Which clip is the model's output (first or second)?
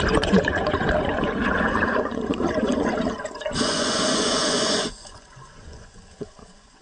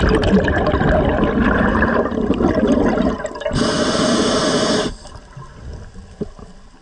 first